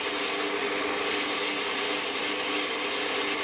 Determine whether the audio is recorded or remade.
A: recorded